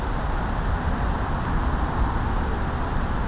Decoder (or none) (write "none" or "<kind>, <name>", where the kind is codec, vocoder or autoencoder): none